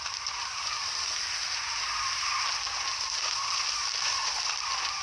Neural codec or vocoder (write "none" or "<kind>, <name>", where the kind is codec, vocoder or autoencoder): none